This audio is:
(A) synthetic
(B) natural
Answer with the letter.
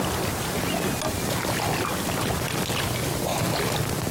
B